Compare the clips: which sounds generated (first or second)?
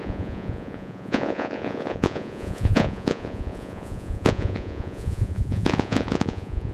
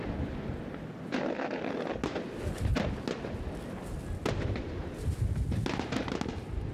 first